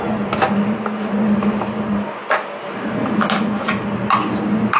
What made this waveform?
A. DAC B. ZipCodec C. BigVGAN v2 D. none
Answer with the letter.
D